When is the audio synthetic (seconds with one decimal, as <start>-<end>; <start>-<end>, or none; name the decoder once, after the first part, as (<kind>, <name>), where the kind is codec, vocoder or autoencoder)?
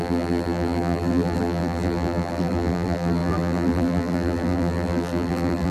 0.0-5.7 (vocoder, BigVGAN v2)